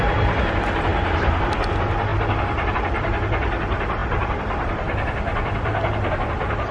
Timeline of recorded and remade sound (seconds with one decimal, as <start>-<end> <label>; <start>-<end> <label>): 0.0-6.7 recorded